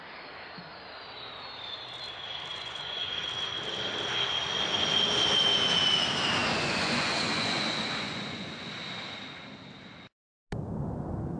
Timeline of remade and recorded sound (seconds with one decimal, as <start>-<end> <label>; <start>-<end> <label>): 0.0-2.5 recorded; 2.5-3.2 remade; 3.2-6.4 recorded; 6.4-8.7 remade; 8.7-11.4 recorded